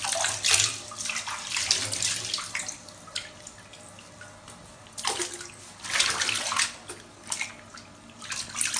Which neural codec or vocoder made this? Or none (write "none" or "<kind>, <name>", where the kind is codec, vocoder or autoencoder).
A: none